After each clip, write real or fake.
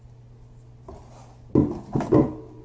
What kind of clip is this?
real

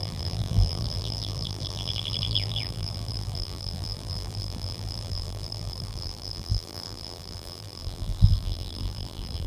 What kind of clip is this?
fake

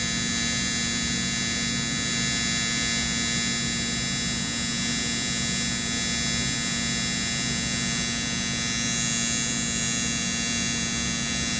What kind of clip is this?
real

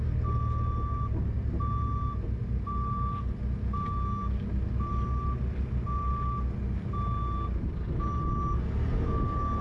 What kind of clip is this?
real